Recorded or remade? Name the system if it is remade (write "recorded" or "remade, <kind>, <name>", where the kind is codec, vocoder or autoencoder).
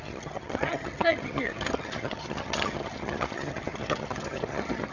remade, vocoder, HiFi-GAN